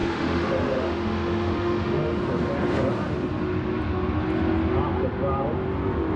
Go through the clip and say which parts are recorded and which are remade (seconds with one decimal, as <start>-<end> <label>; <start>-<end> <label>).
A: 0.0-2.2 remade; 2.2-6.2 recorded